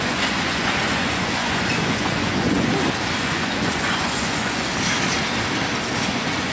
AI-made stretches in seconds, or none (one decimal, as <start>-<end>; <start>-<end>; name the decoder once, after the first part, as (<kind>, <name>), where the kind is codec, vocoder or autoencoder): 0.0-2.7 (vocoder, Vocos); 3.2-4.7; 6.1-6.5